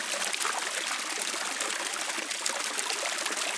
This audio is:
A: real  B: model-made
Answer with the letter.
A